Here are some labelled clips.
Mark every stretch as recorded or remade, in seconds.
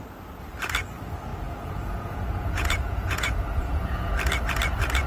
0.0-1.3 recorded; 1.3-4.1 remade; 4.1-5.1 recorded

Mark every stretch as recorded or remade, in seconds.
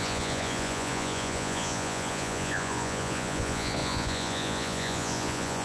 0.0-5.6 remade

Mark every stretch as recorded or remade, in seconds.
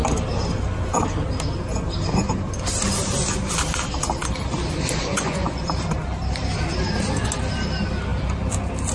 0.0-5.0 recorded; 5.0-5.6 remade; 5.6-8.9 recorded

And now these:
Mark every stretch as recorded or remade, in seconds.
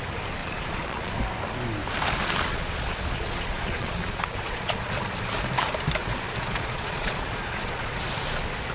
0.0-0.4 recorded; 0.4-1.1 remade; 1.1-2.5 recorded; 2.5-4.9 remade; 4.9-6.0 recorded; 6.0-7.9 remade; 7.9-8.7 recorded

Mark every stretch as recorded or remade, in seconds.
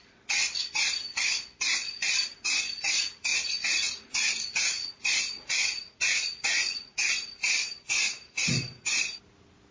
0.0-3.3 recorded; 3.3-7.1 remade; 7.1-9.7 recorded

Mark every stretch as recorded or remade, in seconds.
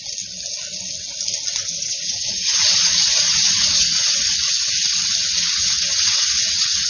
0.0-1.6 recorded; 1.6-4.4 remade; 4.4-5.2 recorded; 5.2-6.9 remade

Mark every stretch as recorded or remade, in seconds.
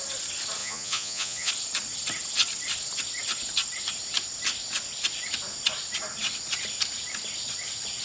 0.0-0.6 recorded; 0.6-1.5 remade; 1.5-8.0 recorded